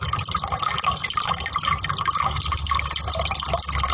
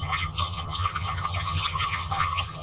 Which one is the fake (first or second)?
second